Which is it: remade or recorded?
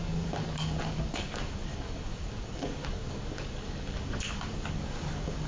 remade